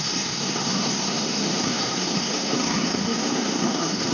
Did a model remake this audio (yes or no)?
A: yes